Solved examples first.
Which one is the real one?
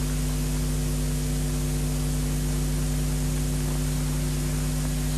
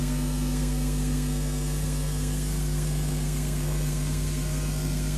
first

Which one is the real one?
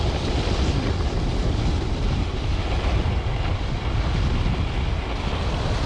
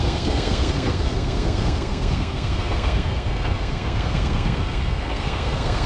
first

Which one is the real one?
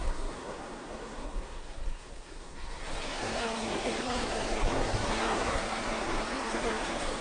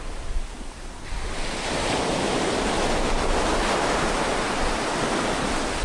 second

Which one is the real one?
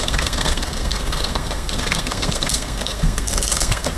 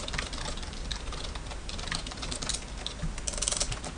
second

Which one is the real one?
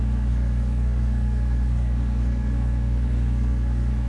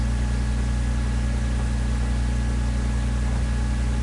second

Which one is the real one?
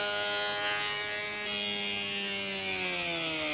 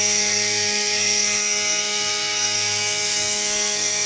first